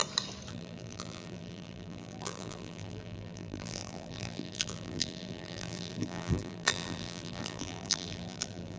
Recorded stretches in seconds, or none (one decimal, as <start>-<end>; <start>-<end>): 0.0-0.5

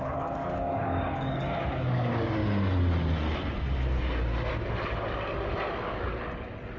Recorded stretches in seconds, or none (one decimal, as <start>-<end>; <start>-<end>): 2.4-6.8

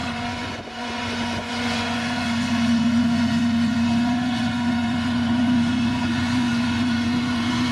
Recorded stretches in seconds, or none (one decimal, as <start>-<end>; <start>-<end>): none

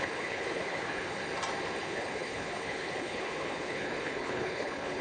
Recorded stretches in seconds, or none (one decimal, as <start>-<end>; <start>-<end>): 1.2-1.8

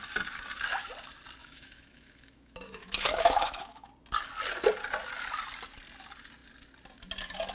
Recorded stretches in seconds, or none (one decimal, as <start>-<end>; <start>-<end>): 0.0-1.4; 3.9-7.5

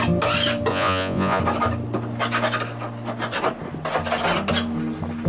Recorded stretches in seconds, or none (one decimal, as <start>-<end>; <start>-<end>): 0.0-0.7; 1.4-5.3

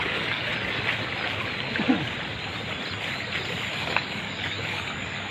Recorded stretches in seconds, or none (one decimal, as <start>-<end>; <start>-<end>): 0.5-3.7

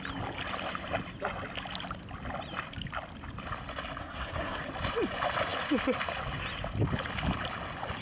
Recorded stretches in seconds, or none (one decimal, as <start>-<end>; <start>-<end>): 0.0-4.0; 4.6-8.0